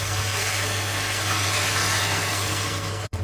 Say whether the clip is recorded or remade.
remade